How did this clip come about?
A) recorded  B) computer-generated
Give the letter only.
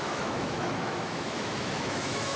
B